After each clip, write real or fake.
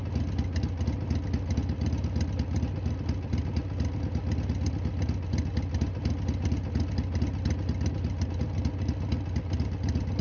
real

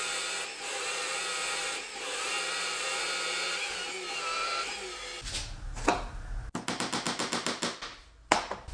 real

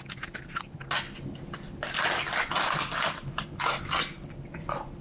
real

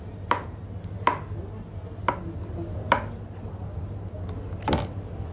real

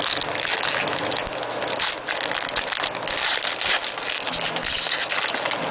real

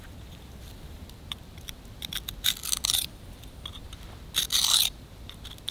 fake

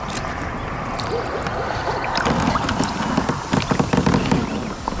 real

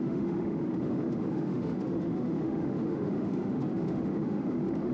fake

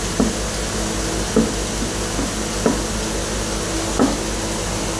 real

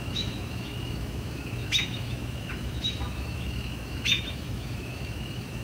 fake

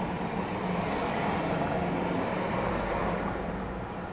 real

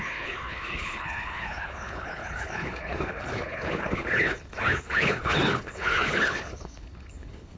fake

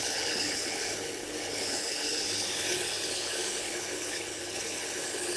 fake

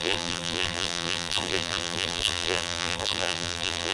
fake